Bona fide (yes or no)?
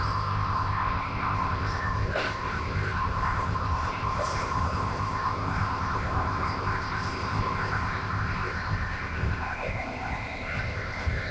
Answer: no